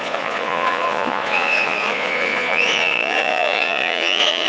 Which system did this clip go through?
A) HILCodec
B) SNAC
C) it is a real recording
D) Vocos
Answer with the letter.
D